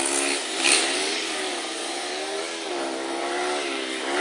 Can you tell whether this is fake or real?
fake